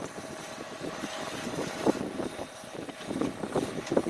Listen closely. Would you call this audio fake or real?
fake